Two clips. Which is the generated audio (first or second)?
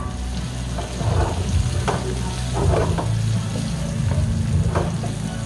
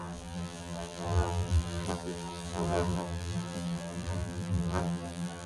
second